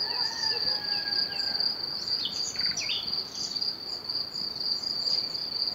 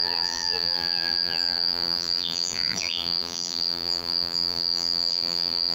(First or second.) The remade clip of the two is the second